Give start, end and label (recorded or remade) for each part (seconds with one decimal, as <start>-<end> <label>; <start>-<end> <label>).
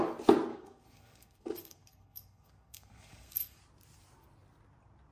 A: 0.0-0.5 recorded; 0.5-3.6 remade; 3.6-5.1 recorded